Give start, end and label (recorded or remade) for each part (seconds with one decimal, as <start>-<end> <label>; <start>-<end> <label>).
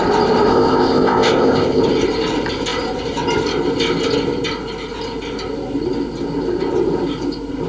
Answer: 0.0-0.5 recorded; 0.5-1.8 remade; 1.8-7.7 recorded